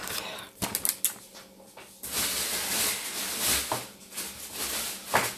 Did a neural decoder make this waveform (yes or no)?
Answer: no